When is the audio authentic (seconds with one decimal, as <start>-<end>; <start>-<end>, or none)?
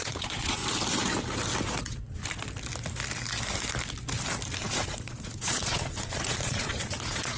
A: 0.6-1.8; 2.2-4.6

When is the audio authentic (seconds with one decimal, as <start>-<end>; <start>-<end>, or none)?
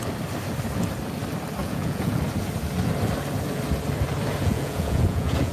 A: 0.0-1.6; 2.2-4.4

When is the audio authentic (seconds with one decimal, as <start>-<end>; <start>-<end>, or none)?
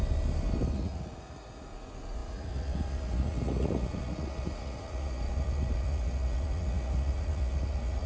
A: 0.0-0.7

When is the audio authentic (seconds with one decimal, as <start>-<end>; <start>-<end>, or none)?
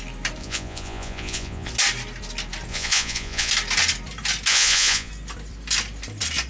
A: 0.0-0.4; 1.7-2.7; 3.5-4.5; 5.1-6.5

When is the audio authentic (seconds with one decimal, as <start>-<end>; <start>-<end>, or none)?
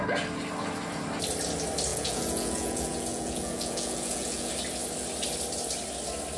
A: 0.0-1.9; 4.5-6.4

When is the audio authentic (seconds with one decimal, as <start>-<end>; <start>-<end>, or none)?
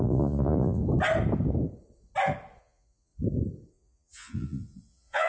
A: 0.8-2.6; 3.1-3.7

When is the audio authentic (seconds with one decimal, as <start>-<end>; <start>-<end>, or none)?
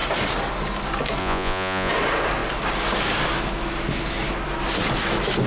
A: 0.0-1.2; 1.9-5.5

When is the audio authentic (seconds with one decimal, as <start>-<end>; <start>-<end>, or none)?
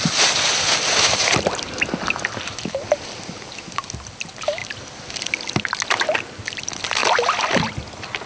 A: 0.0-8.3